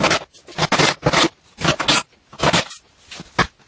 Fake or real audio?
real